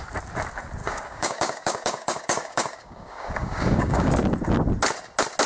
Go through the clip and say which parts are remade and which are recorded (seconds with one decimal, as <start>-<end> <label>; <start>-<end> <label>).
0.0-0.8 recorded; 0.8-4.1 remade; 4.1-5.5 recorded

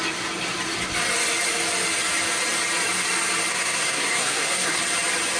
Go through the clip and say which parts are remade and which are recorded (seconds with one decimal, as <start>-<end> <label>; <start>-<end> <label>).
0.0-3.5 recorded; 3.5-4.8 remade; 4.8-5.4 recorded

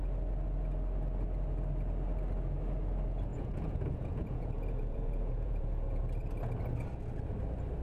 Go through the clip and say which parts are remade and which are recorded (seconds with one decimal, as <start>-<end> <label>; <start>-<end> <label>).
0.0-3.3 recorded; 3.3-6.0 remade; 6.0-7.8 recorded

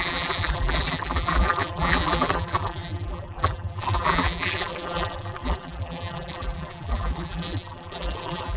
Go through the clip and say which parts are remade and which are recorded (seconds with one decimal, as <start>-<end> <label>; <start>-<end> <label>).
0.0-8.6 remade

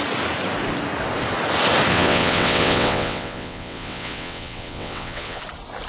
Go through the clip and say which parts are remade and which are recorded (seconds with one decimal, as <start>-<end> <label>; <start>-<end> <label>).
0.0-1.9 recorded; 1.9-5.4 remade; 5.4-5.9 recorded

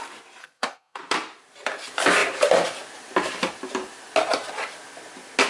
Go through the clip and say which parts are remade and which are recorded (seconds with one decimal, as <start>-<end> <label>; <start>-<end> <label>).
0.0-0.4 recorded; 0.4-1.0 remade; 1.0-5.5 recorded

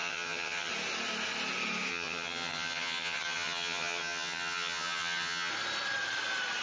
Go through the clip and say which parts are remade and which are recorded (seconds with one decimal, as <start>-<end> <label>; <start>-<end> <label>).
0.0-0.7 remade; 0.7-1.9 recorded; 1.9-5.5 remade; 5.5-6.6 recorded